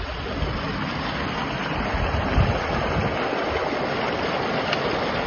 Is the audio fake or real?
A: real